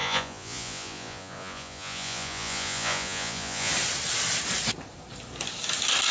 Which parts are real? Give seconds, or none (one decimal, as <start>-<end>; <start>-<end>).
3.7-6.1